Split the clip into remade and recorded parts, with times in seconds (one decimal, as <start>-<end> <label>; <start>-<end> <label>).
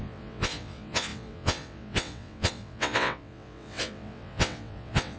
0.0-5.2 remade